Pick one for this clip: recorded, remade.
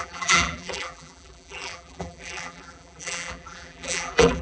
remade